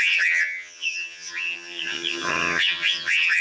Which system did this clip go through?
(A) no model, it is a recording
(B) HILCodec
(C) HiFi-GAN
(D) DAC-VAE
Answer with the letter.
C